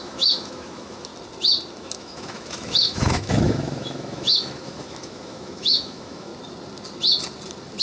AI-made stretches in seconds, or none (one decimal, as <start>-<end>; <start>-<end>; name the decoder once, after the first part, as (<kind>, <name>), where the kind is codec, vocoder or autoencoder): 0.0-1.1 (autoencoder, DAC-VAE); 1.7-6.3